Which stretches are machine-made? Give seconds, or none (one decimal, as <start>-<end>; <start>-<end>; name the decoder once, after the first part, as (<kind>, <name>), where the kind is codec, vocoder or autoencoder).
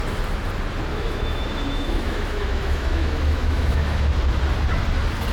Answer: 0.9-4.1 (autoencoder, DAC-VAE)